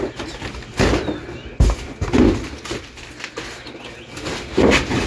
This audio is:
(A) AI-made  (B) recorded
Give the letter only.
B